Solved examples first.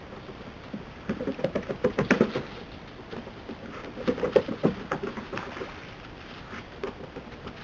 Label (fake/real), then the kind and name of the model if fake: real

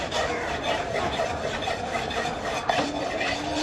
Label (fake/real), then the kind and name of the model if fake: real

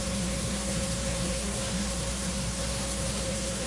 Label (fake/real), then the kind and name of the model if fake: fake, codec, SNAC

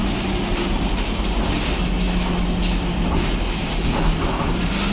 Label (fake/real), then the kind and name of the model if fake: real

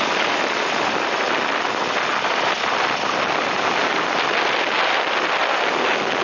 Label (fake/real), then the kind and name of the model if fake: real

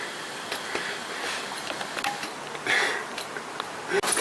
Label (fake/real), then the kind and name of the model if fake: real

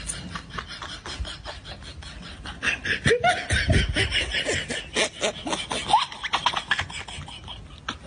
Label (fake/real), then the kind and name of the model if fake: real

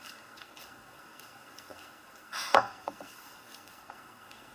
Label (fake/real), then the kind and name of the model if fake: fake, codec, SNAC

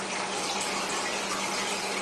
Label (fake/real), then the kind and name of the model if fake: real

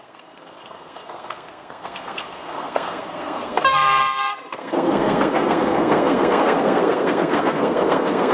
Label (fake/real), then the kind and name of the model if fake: fake, codec, SNAC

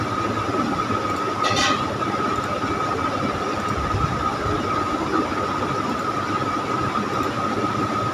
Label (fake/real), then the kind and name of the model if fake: real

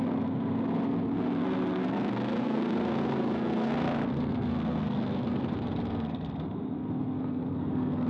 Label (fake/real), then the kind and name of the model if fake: fake, codec, SNAC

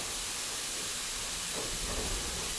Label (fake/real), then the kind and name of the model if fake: real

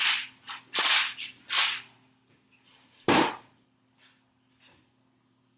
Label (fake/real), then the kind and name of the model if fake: real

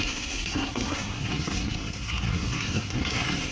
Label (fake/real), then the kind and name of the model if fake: fake, codec, SNAC